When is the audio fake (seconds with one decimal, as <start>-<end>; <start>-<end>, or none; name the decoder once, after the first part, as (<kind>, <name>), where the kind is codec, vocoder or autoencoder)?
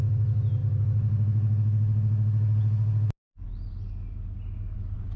none